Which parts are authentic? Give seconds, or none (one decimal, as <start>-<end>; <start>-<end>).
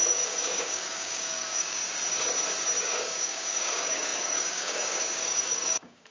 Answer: 1.8-2.8